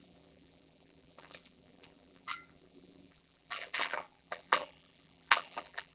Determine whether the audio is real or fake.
fake